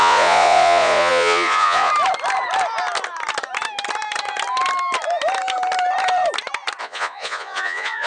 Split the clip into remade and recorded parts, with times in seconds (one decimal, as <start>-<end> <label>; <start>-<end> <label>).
0.0-1.9 remade; 1.9-6.8 recorded; 6.8-8.1 remade